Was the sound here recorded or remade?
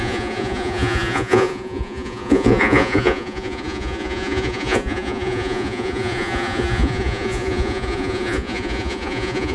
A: remade